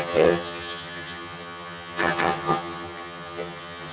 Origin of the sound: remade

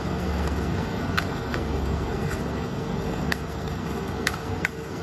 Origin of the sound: remade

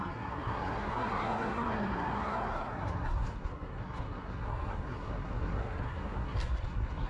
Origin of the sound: remade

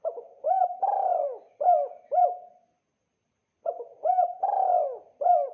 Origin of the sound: remade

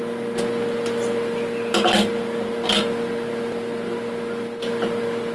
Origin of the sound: recorded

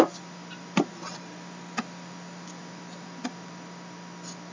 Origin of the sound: recorded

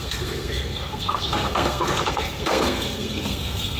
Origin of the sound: remade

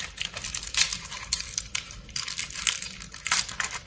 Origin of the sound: recorded